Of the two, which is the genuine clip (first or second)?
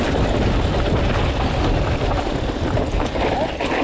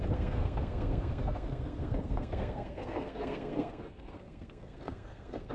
first